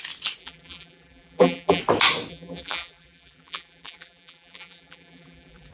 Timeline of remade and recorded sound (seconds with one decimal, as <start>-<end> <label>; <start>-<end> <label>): 0.0-0.4 recorded; 0.4-1.8 remade; 1.8-2.3 recorded; 2.3-5.7 remade